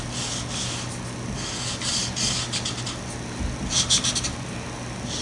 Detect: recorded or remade recorded